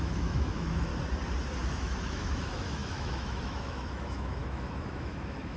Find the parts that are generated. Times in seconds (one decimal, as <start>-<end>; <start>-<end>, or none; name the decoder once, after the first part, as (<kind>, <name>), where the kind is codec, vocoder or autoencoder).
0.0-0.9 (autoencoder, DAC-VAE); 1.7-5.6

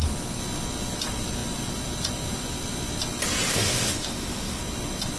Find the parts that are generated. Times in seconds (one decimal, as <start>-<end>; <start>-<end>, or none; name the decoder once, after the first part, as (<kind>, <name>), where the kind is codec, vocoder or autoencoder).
3.5-4.6 (autoencoder, DAC-VAE)

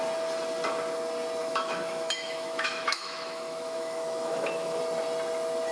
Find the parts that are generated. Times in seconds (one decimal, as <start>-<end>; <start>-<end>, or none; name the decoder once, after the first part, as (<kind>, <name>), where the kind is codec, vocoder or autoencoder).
1.4-4.8 (autoencoder, DAC-VAE)

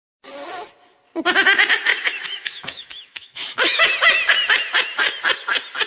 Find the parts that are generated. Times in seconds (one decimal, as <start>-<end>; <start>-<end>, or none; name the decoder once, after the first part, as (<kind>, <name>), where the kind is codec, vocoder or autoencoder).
1.9-3.8 (autoencoder, DAC-VAE)

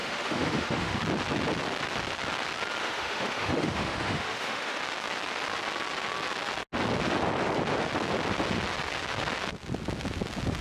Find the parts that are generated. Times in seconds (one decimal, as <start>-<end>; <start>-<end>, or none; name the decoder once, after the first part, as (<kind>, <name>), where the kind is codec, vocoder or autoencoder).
0.0-1.0 (autoencoder, DAC-VAE); 2.8-4.8

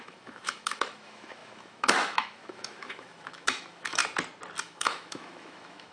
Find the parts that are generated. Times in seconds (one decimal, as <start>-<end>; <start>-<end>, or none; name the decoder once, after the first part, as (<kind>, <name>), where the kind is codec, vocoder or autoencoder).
0.0-4.0 (autoencoder, DAC-VAE); 4.6-5.9